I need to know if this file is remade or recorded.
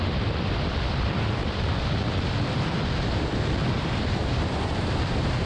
remade